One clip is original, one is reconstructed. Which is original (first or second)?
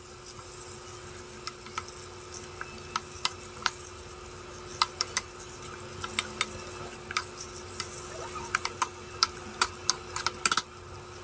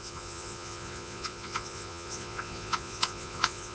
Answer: first